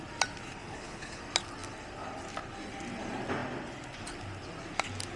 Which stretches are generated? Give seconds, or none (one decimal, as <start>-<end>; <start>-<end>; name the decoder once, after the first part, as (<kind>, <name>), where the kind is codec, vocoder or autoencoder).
0.6-1.2 (codec, HILCodec)